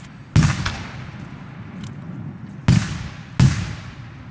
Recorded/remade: recorded